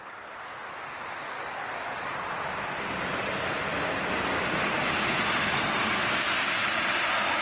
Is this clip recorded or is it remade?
recorded